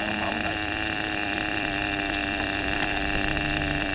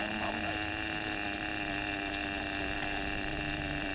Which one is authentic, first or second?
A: second